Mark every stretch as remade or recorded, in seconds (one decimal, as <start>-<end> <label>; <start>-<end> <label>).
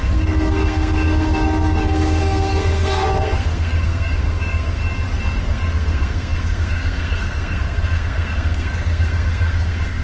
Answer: 0.0-4.8 remade; 4.8-5.4 recorded; 5.4-10.0 remade